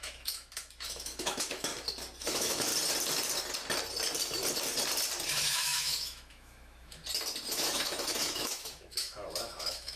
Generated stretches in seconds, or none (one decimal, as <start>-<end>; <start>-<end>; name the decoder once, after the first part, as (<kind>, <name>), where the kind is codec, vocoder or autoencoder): 0.0-1.7 (autoencoder, DAC-VAE); 2.2-2.7; 5.3-7.0; 7.5-10.0